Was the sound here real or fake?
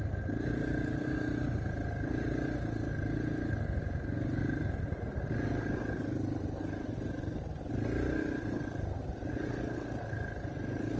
real